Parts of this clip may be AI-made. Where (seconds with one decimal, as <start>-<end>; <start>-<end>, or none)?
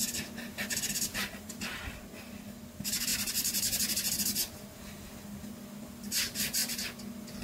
1.1-1.8